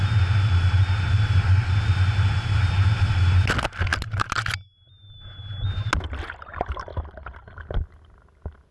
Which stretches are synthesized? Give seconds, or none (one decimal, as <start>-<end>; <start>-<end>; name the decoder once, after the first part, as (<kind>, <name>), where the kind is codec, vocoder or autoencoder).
none